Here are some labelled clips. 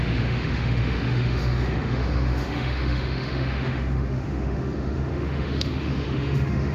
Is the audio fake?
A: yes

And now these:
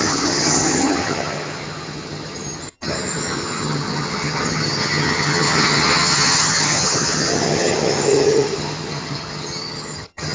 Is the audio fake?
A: yes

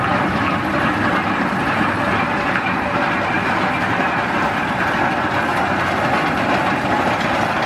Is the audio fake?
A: no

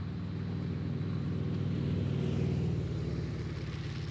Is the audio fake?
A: no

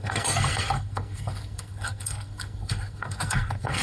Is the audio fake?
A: yes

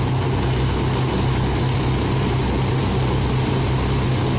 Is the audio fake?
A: no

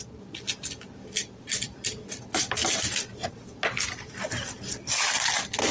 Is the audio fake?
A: no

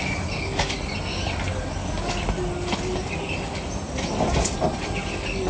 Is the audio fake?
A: no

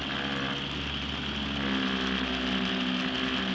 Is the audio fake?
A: no